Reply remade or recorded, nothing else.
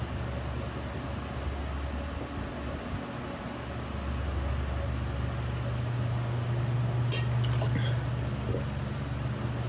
recorded